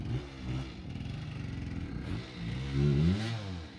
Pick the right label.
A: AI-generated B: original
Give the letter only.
B